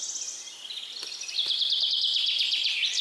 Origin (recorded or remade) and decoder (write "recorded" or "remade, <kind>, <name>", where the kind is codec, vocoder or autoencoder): recorded